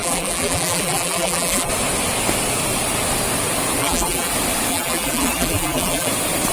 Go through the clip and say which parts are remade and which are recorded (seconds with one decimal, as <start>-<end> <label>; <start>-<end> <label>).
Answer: 0.0-1.7 remade; 1.7-3.8 recorded; 3.8-4.3 remade; 4.3-4.7 recorded; 4.7-6.1 remade; 6.1-6.5 recorded